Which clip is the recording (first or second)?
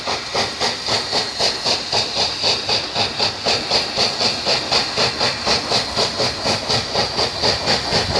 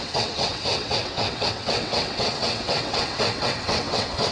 first